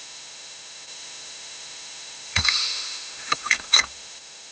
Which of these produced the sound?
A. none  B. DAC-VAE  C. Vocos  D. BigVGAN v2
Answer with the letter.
B